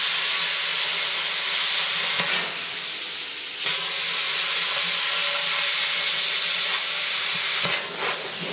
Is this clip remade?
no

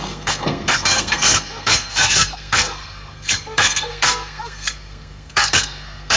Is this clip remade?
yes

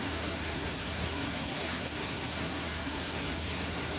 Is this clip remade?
yes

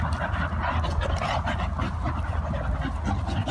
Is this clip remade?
no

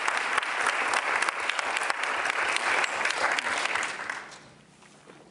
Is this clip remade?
no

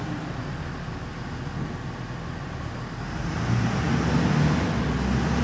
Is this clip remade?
no